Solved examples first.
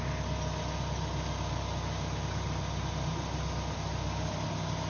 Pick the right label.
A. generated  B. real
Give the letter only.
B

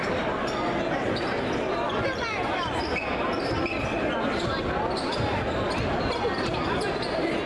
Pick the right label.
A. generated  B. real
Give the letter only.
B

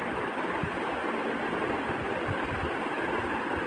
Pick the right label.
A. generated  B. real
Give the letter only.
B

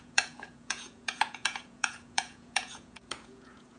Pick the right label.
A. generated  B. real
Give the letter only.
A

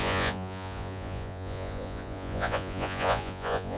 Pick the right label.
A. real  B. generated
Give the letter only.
B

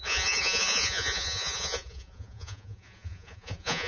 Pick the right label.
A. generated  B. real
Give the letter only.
A